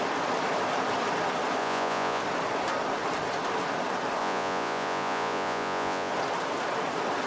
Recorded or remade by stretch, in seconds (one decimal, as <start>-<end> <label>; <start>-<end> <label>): 0.0-1.6 recorded; 1.6-2.2 remade; 2.2-4.2 recorded; 4.2-6.1 remade; 6.1-7.3 recorded